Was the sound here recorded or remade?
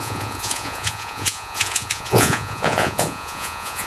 remade